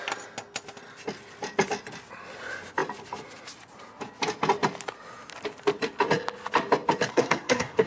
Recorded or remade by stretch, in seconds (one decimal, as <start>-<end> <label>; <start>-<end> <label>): 0.0-7.1 recorded; 7.1-7.9 remade